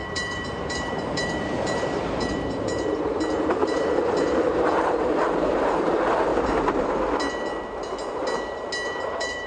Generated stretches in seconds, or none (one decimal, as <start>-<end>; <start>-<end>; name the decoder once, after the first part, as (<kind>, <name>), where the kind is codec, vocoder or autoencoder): 0.0-6.3 (vocoder, BigVGAN v2); 9.0-9.5